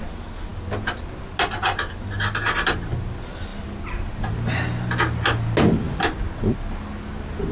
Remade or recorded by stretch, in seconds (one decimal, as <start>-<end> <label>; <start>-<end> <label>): 0.0-7.5 recorded